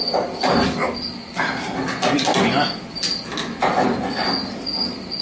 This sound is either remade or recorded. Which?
recorded